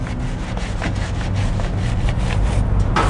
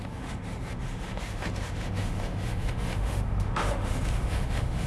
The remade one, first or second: second